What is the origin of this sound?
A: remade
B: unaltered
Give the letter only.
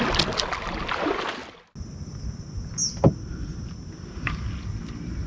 B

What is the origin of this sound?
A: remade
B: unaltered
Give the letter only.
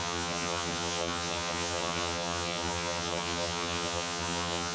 A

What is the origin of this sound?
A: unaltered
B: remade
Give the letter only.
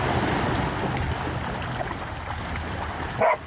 A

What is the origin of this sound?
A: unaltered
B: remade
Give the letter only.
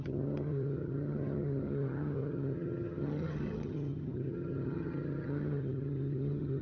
B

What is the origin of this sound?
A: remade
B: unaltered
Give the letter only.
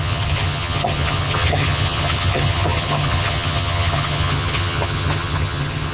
A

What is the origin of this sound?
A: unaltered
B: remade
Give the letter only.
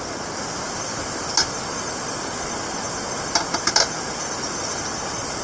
A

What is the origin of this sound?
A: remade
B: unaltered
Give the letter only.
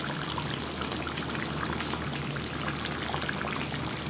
B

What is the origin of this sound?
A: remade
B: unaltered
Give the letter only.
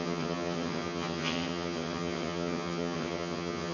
A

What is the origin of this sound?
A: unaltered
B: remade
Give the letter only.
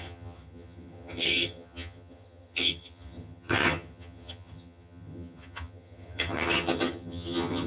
B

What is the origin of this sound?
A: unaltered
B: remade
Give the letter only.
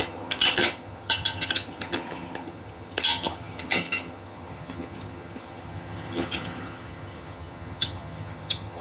B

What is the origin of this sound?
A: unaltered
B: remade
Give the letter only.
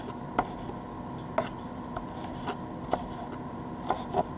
A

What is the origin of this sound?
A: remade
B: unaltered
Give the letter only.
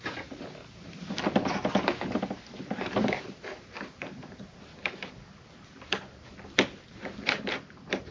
B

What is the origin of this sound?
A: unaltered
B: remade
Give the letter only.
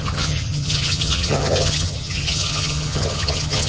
B